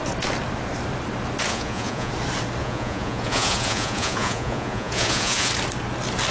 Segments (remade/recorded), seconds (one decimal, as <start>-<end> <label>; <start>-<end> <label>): 0.0-1.5 recorded; 1.5-2.1 remade; 2.1-2.6 recorded; 2.6-5.5 remade; 5.5-6.3 recorded